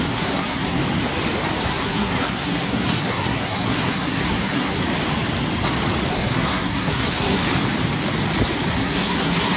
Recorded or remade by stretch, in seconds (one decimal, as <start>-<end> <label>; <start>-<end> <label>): 0.0-0.8 remade; 0.8-1.6 recorded; 1.6-4.8 remade; 4.8-6.1 recorded; 6.1-7.4 remade; 7.4-8.7 recorded; 8.7-9.6 remade